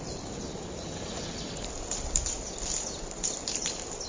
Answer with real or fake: real